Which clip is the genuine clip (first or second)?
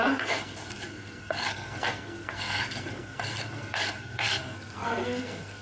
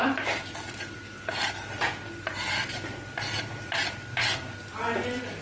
second